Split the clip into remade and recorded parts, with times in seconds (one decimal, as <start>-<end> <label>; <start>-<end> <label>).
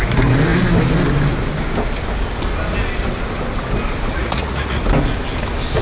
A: 0.0-4.1 recorded; 4.1-4.8 remade; 4.8-5.8 recorded